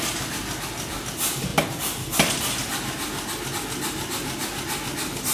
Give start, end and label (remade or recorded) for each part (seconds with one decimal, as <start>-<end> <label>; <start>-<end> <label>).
0.0-5.3 recorded